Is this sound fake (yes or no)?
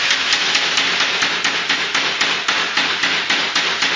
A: no